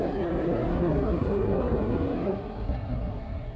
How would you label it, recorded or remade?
remade